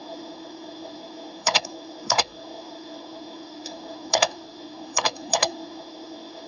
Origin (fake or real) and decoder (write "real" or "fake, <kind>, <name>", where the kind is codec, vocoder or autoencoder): fake, codec, SNAC